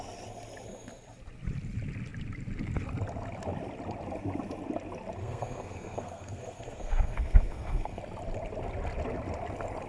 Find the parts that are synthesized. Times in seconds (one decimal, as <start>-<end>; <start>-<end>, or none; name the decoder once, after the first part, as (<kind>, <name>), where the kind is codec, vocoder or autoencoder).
5.2-8.0 (codec, SNAC)